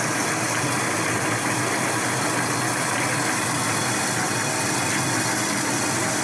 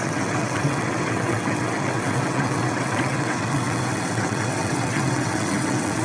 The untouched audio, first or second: first